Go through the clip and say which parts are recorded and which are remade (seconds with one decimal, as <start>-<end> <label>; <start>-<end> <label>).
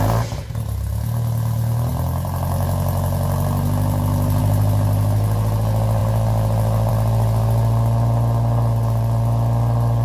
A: 0.0-1.9 recorded; 1.9-4.4 remade; 4.4-6.0 recorded; 6.0-6.9 remade; 6.9-10.0 recorded